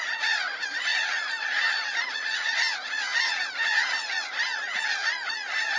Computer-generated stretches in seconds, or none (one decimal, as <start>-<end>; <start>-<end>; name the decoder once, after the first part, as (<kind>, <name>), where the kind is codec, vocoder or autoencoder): 0.0-5.8 (vocoder, Vocos)